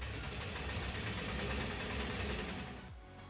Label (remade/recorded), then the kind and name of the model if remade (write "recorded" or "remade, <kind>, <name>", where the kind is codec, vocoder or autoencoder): recorded